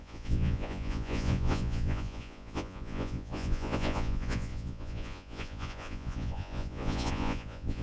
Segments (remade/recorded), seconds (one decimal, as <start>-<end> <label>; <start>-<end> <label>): 0.0-7.8 remade